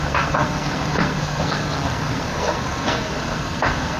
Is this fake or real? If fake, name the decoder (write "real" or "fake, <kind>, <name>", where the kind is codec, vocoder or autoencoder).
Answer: fake, codec, SNAC